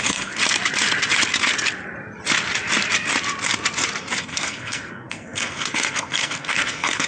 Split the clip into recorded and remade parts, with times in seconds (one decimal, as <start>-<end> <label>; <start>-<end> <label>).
0.0-0.4 remade; 0.4-4.2 recorded; 4.2-7.1 remade